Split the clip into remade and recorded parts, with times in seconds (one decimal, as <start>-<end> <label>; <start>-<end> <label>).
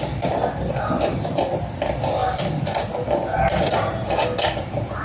0.0-5.0 recorded